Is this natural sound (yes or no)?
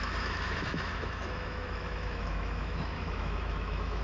no